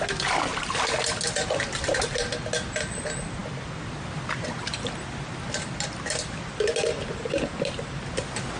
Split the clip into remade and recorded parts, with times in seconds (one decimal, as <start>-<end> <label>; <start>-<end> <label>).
0.0-8.6 recorded